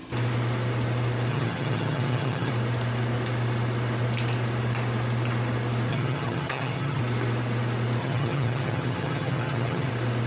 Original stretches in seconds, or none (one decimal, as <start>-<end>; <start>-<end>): 0.0-1.3; 2.5-5.9; 7.0-8.0; 9.9-10.3